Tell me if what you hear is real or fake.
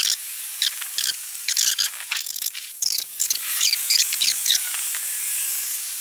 fake